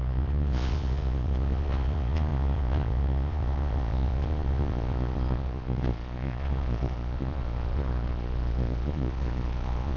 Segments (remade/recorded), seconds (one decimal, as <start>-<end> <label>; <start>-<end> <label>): 0.0-10.0 remade